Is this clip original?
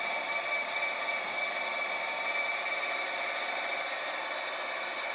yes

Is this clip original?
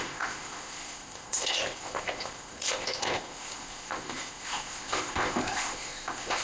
no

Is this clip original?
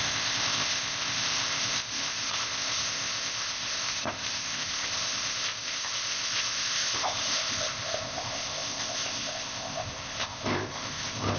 no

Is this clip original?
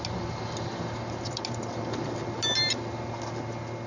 yes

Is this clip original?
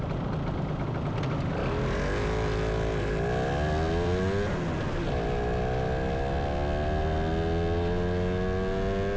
yes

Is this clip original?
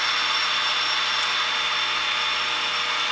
yes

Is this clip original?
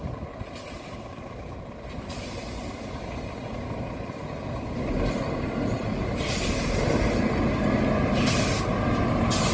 yes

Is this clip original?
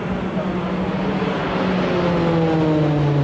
yes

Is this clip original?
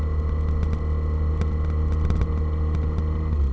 yes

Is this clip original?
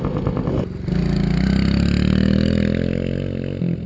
yes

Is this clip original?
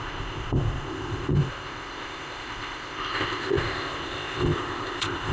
no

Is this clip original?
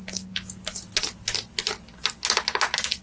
yes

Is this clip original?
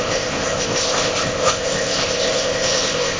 no